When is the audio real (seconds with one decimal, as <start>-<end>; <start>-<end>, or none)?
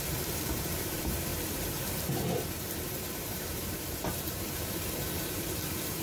none